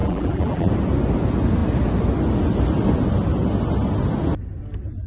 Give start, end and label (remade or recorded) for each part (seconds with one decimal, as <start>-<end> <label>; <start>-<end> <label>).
0.0-0.7 remade; 0.7-5.1 recorded